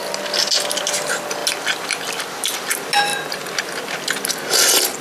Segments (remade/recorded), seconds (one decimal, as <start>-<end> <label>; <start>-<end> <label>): 0.0-5.0 recorded